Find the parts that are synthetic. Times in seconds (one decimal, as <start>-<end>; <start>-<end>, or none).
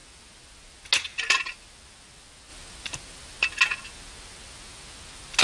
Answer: none